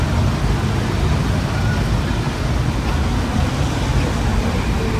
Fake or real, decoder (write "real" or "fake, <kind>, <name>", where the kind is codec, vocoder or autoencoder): real